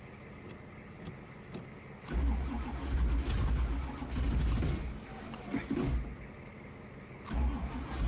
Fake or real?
real